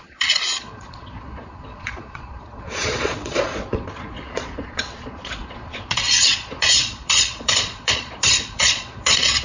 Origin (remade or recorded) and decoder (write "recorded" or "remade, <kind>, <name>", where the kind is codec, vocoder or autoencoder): remade, vocoder, Vocos